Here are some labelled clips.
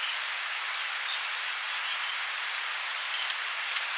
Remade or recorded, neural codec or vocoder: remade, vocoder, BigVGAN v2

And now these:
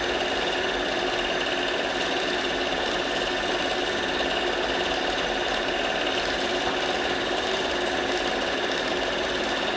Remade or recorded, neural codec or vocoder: recorded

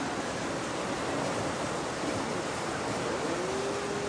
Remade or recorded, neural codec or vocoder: recorded